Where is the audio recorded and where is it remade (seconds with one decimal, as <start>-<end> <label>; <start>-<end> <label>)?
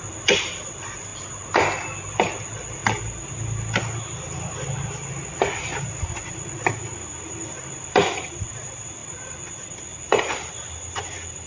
0.0-1.1 remade; 1.1-2.1 recorded; 2.1-2.8 remade; 2.8-7.1 recorded; 7.1-11.5 remade